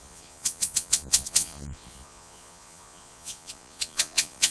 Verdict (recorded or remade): remade